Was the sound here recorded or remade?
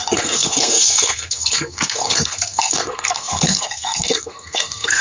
remade